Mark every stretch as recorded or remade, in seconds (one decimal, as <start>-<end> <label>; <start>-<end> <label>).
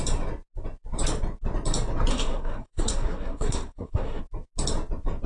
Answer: 0.0-2.1 recorded; 2.1-4.2 remade; 4.2-5.3 recorded